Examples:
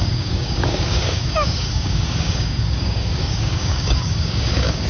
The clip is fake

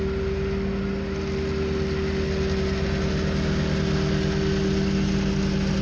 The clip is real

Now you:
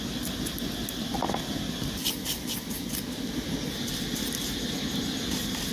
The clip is real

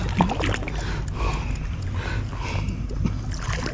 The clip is real